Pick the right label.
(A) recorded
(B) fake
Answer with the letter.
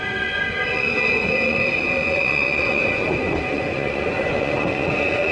B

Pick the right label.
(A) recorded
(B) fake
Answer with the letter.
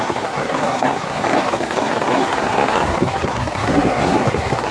B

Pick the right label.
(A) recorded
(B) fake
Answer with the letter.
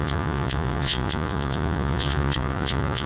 B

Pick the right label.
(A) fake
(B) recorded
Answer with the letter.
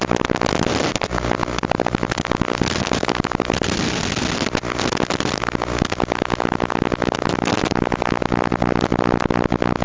B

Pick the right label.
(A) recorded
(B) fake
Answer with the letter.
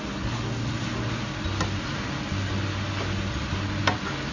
A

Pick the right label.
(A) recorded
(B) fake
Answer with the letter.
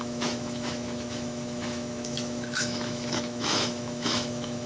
B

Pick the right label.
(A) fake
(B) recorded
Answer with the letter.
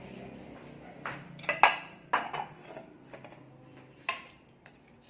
B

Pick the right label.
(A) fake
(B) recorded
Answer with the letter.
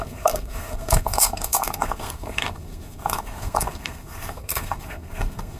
A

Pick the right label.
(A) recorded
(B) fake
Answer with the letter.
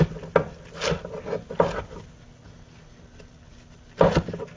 A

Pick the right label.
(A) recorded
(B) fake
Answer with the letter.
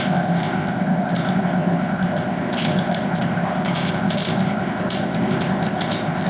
B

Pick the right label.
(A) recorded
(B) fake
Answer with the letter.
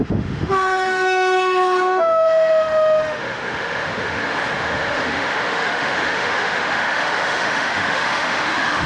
B